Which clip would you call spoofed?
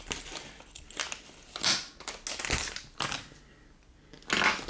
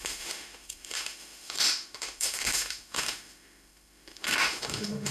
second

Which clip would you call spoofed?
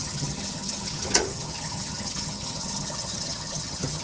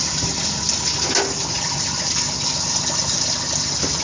first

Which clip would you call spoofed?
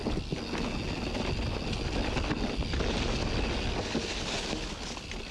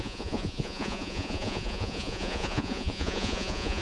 second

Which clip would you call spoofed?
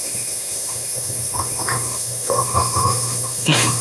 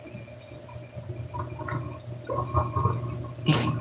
first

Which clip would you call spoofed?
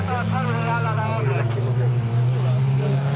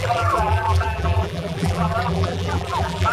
second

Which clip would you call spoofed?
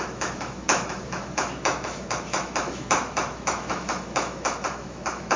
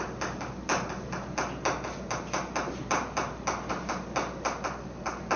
first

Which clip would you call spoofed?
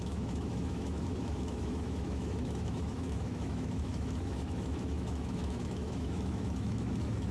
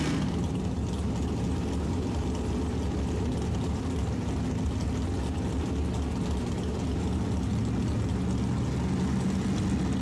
first